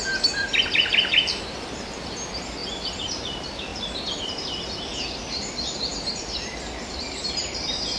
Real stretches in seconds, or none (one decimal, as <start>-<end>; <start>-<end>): 0.0-2.6; 3.1-3.7; 4.4-5.9; 7.4-8.0